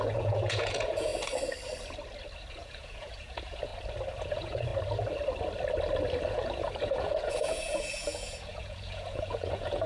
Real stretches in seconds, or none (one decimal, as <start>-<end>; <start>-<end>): 1.1-2.5; 3.7-4.2; 4.7-6.3

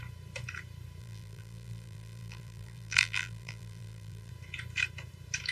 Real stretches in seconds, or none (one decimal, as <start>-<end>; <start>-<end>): 0.0-1.0; 4.3-5.5

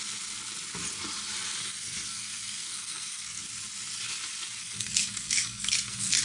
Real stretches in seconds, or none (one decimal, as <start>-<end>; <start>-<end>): 0.0-1.6; 3.4-4.6

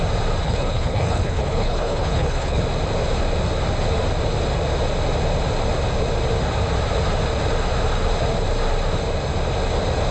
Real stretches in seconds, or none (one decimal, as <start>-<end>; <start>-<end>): 0.0-0.4; 2.6-10.1

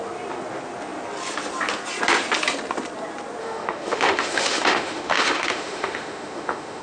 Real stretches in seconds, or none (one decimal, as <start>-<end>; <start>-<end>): 0.0-3.4

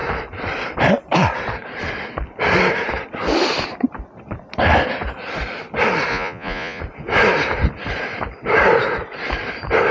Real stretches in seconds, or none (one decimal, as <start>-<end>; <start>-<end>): 0.0-6.1; 6.8-9.9

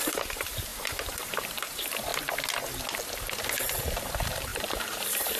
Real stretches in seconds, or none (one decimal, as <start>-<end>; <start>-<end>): 2.1-4.0

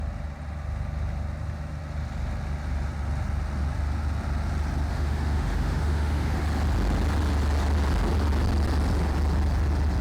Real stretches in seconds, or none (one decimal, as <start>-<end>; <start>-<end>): 0.0-4.9; 6.4-10.0